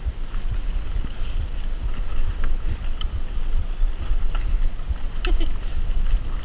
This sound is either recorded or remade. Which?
recorded